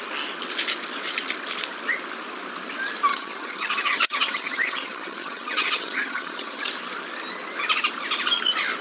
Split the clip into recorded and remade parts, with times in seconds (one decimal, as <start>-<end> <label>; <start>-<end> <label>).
0.0-3.1 recorded; 3.1-6.7 remade; 6.7-8.8 recorded